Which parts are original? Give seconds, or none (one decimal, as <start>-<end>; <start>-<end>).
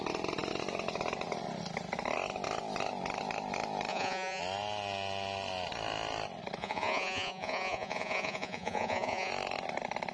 0.0-3.9; 4.4-6.6; 9.3-10.1